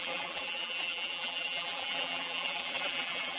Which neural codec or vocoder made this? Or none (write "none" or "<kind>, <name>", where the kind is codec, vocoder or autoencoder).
vocoder, BigVGAN v2